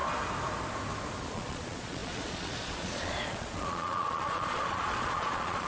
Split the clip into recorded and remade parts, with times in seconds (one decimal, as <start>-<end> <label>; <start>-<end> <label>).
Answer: 0.0-1.2 recorded; 1.2-5.7 remade